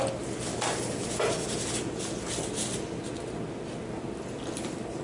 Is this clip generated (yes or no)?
no